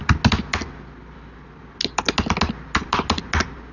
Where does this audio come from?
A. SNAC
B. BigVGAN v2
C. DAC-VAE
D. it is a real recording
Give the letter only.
D